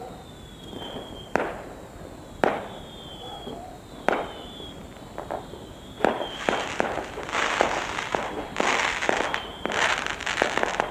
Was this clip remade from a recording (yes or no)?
yes